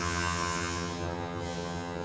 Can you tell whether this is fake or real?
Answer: fake